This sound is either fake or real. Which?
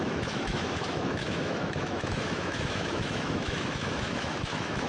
fake